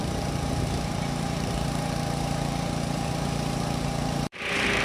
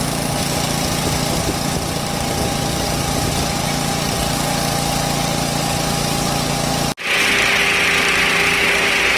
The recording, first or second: second